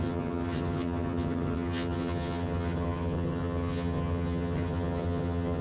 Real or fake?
fake